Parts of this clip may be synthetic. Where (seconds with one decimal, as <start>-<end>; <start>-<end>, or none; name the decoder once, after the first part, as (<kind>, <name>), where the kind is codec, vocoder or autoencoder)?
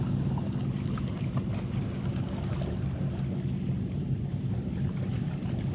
4.3-5.7 (vocoder, BigVGAN v2)